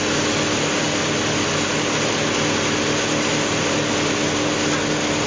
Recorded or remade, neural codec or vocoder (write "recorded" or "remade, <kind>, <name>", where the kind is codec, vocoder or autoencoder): recorded